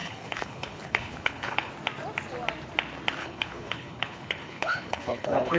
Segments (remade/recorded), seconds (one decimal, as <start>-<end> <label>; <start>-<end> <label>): 0.0-1.7 remade; 1.7-3.2 recorded; 3.2-5.6 remade